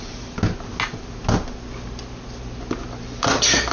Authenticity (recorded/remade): recorded